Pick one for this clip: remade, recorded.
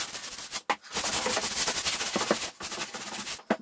recorded